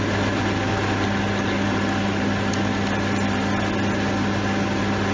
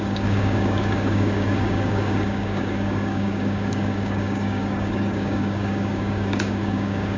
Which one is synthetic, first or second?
second